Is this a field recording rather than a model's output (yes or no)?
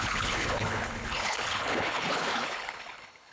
no